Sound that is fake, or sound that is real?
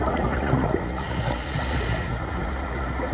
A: fake